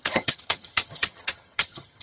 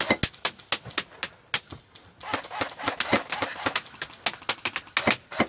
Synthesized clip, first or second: first